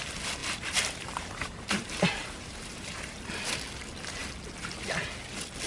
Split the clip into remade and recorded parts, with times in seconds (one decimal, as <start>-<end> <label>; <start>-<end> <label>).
0.0-0.4 recorded; 0.4-3.2 remade; 3.2-5.7 recorded